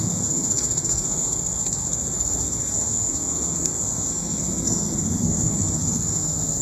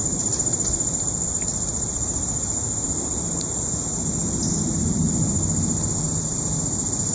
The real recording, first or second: second